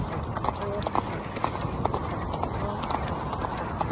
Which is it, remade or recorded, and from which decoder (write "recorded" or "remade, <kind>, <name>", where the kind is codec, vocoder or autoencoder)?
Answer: recorded